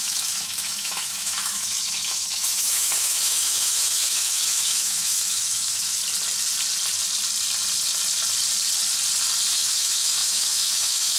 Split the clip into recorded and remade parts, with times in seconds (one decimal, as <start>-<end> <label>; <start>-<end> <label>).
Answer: 0.0-6.0 remade; 6.0-9.5 recorded; 9.5-11.2 remade